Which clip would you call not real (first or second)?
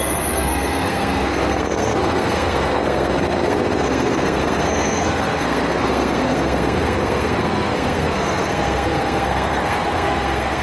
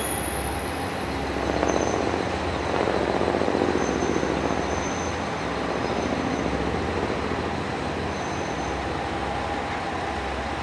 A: first